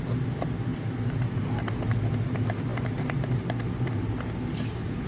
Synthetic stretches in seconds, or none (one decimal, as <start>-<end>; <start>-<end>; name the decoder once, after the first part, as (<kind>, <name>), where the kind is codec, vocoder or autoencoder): none